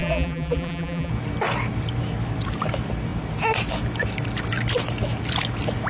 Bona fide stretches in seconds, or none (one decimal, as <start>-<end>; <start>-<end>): 1.1-5.9